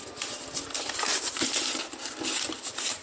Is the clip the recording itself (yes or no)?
yes